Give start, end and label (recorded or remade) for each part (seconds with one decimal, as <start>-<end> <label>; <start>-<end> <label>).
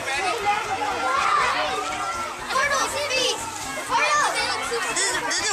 0.0-5.5 recorded